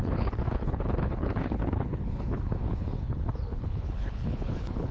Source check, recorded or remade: remade